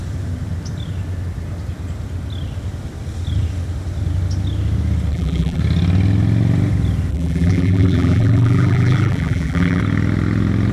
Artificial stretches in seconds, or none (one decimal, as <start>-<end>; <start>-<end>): 5.1-5.6; 7.1-9.8